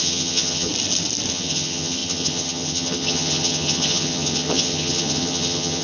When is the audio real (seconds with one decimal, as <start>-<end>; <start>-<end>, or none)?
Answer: 0.7-1.3